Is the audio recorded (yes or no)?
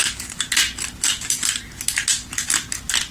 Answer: yes